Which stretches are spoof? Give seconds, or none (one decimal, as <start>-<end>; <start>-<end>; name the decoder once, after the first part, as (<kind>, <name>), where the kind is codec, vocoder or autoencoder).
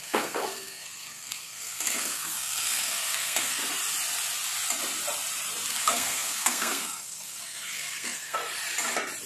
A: 0.0-3.6 (codec, SNAC); 5.7-8.4